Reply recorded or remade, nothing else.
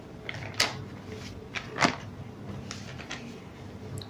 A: recorded